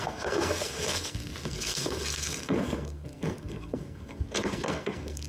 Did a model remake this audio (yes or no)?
yes